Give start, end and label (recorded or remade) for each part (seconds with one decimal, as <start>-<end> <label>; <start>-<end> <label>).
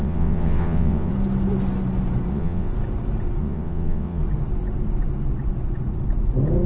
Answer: 0.0-1.1 remade; 1.1-2.3 recorded; 2.3-2.7 remade; 2.7-3.4 recorded; 3.4-4.2 remade; 4.2-6.7 recorded